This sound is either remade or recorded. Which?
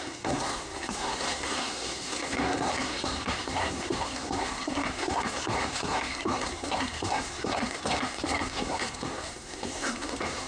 remade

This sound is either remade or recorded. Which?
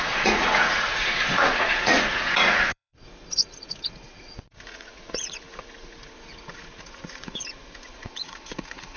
remade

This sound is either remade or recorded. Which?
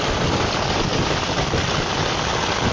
recorded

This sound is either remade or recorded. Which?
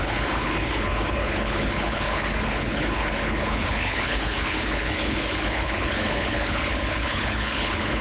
remade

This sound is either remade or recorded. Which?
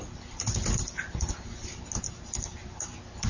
recorded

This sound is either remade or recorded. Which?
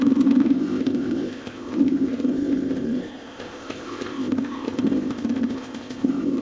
remade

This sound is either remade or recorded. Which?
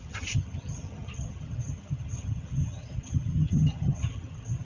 remade